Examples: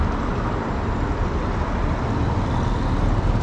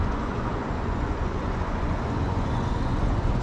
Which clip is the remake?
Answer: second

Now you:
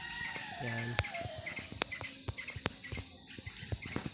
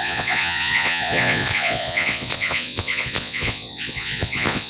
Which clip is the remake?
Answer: second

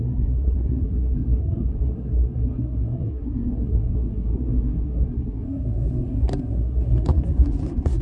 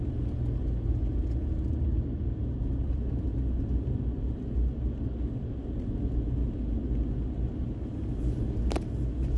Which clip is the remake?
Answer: first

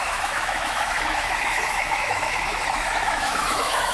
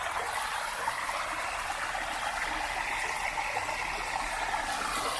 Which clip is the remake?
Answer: first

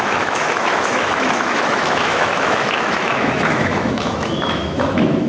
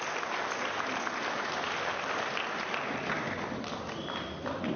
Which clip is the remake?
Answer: first